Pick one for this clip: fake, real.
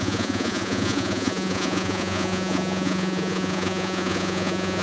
fake